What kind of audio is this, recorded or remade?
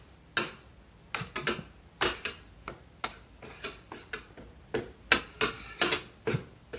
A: recorded